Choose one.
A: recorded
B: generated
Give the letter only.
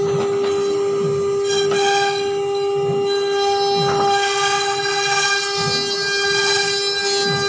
A